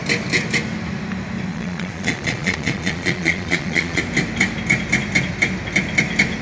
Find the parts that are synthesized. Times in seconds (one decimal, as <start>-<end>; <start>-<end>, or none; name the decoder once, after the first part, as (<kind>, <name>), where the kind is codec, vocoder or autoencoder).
1.5-4.0 (vocoder, Vocos)